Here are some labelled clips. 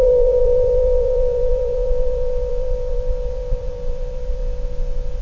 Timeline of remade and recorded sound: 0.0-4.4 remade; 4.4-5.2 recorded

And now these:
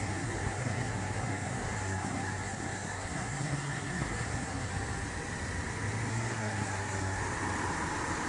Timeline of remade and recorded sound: 0.0-4.7 remade; 4.7-6.1 recorded; 6.1-7.2 remade; 7.2-8.3 recorded

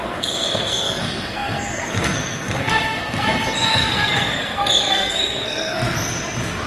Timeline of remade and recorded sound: 0.0-5.8 remade; 5.8-6.7 recorded

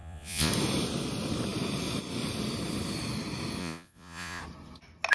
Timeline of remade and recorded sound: 0.0-0.5 remade; 0.5-3.6 recorded; 3.6-4.4 remade; 4.4-5.1 recorded

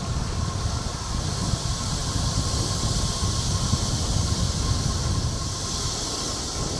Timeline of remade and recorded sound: 0.0-6.8 recorded